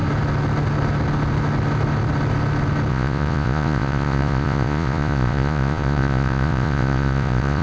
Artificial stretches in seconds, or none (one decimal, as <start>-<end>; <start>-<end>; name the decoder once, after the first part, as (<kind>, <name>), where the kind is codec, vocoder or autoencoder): 2.9-7.6 (vocoder, Vocos)